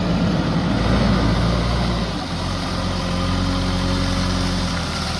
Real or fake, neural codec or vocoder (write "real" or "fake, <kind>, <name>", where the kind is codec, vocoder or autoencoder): real